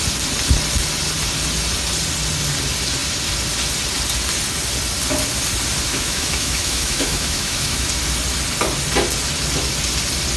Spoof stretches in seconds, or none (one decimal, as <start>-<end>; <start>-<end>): 5.9-7.9